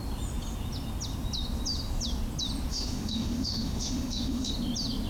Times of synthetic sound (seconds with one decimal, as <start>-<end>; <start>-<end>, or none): 2.7-4.5